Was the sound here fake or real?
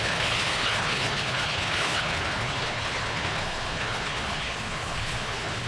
fake